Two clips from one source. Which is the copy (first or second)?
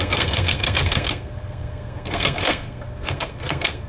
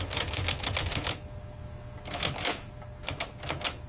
first